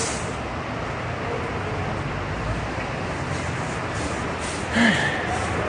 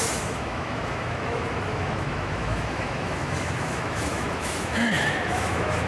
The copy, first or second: second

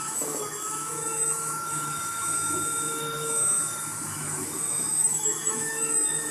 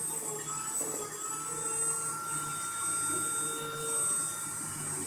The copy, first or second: first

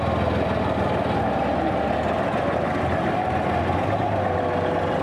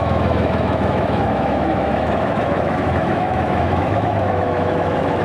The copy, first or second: second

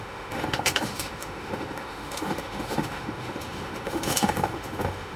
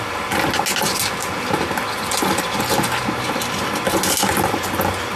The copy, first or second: first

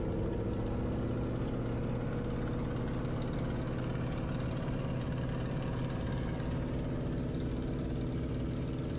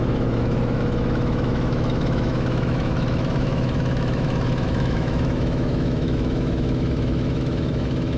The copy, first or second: second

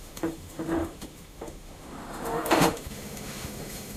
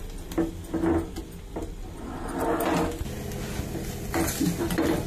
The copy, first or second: first